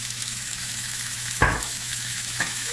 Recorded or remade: remade